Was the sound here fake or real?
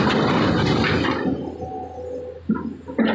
real